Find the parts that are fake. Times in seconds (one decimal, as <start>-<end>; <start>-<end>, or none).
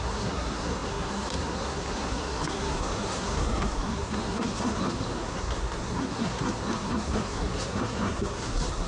0.0-8.9